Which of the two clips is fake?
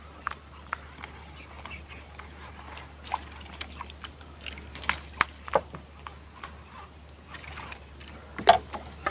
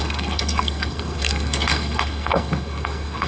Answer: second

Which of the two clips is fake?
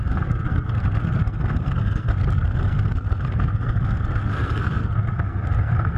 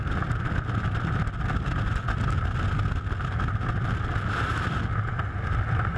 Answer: first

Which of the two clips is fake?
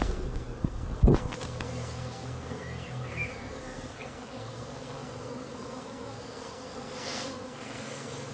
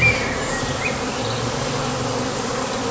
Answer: first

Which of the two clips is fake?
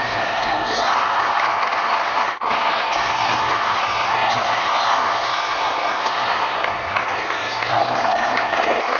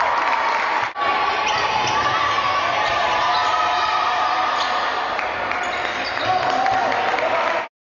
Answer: first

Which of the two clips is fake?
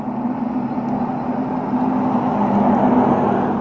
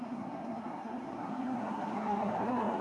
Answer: second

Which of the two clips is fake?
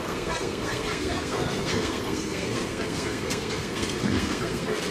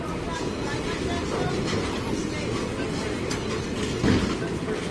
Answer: first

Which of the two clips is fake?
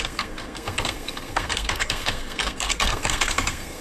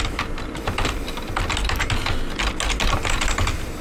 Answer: first